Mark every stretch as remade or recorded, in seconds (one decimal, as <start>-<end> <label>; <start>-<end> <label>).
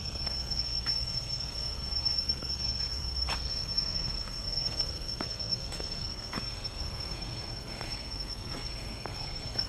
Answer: 0.0-9.7 remade